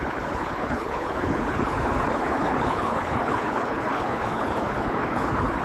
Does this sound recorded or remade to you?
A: remade